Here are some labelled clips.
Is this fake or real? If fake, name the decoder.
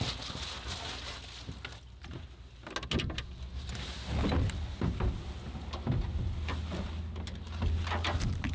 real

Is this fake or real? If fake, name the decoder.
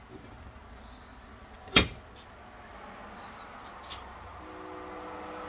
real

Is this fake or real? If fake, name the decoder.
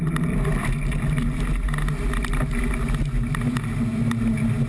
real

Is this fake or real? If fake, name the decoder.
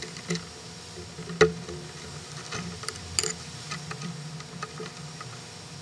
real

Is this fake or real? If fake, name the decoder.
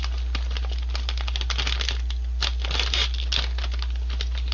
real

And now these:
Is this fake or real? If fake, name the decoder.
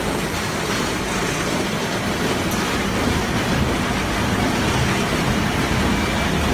real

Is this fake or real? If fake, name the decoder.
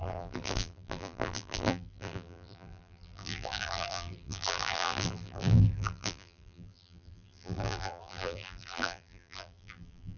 fake, vocoder, BigVGAN v2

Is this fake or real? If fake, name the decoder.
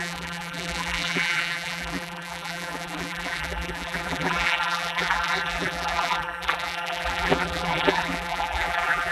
fake, vocoder, BigVGAN v2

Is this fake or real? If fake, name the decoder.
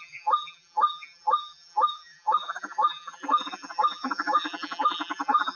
fake, vocoder, BigVGAN v2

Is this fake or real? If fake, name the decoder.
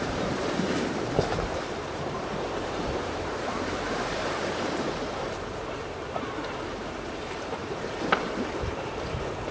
fake, vocoder, BigVGAN v2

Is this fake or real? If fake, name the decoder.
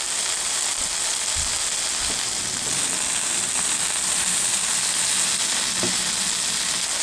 real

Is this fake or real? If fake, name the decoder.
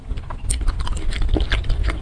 fake, vocoder, BigVGAN v2